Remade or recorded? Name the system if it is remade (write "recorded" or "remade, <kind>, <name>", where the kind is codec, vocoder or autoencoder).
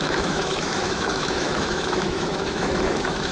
remade, autoencoder, DAC-VAE